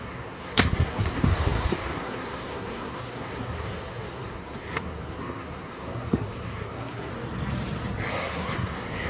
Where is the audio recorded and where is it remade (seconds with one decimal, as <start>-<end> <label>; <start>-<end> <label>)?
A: 0.0-7.1 remade; 7.1-8.1 recorded; 8.1-9.1 remade